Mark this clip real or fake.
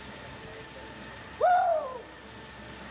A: real